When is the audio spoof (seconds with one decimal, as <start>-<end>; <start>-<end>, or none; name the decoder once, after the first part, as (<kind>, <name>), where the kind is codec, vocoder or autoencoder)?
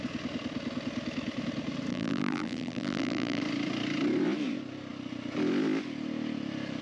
1.9-3.4 (vocoder, BigVGAN v2)